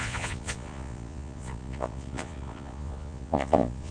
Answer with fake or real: fake